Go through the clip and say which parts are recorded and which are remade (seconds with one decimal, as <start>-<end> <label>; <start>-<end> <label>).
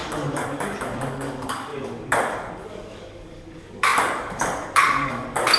0.0-5.6 remade